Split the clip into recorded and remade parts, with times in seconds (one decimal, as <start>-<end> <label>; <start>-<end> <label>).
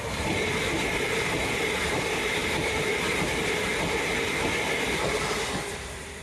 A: 0.0-6.2 recorded